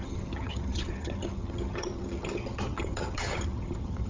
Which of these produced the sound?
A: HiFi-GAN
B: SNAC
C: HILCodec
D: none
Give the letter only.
A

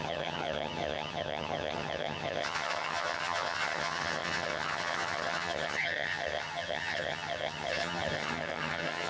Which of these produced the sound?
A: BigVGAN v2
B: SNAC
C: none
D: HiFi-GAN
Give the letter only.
D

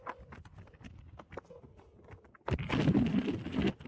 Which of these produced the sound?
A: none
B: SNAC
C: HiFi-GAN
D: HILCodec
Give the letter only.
A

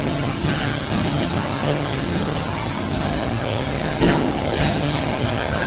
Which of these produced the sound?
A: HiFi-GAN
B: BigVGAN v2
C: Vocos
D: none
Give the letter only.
A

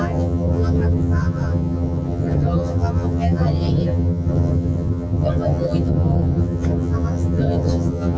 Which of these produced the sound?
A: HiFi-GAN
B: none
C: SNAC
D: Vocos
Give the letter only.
A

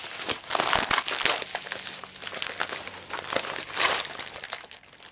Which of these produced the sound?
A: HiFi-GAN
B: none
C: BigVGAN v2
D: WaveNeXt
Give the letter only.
B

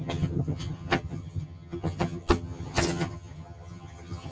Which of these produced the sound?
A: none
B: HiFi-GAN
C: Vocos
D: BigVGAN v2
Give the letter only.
B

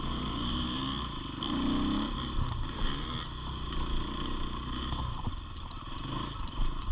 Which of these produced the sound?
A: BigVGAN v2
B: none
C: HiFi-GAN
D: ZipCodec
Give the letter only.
B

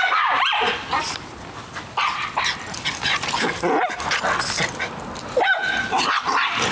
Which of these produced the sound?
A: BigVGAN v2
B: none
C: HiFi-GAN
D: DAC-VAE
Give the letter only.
B